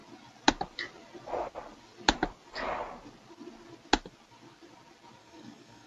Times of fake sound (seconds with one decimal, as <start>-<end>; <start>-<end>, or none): 5.2-5.9